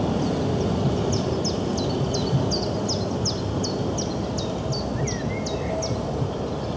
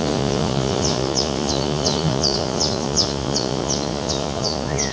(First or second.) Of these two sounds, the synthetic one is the second